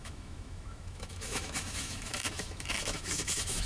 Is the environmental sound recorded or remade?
remade